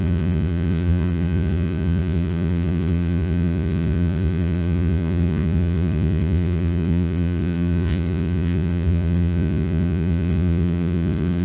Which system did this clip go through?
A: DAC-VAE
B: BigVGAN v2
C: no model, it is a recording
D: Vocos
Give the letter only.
D